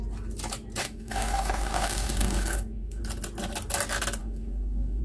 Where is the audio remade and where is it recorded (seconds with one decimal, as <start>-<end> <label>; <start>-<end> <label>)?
0.0-0.8 recorded; 0.8-3.0 remade; 3.0-4.2 recorded; 4.2-5.0 remade